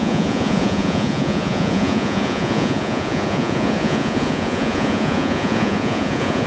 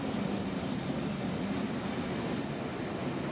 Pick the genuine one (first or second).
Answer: second